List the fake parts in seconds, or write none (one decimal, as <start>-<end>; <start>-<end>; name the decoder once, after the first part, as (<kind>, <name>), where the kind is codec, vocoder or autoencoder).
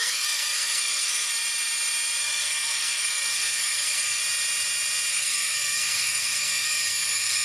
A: 0.0-1.3 (codec, SNAC); 2.2-4.2; 5.1-7.4